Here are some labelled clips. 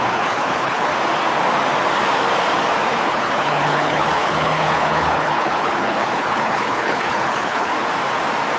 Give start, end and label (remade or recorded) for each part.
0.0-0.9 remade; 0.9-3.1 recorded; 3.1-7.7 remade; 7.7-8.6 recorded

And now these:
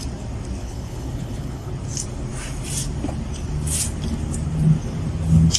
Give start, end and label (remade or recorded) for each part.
0.0-0.6 recorded; 0.6-1.7 remade; 1.7-5.6 recorded

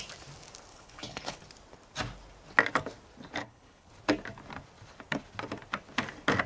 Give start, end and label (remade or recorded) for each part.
0.0-0.7 recorded; 0.7-1.4 remade; 1.4-3.4 recorded; 3.4-3.9 remade; 3.9-6.5 recorded

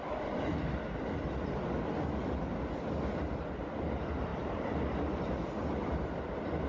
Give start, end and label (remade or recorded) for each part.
0.0-6.7 recorded

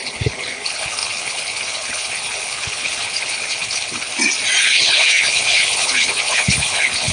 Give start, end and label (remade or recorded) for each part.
0.0-4.1 remade; 4.1-4.6 recorded; 4.6-7.1 remade